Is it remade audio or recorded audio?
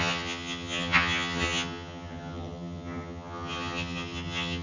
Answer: remade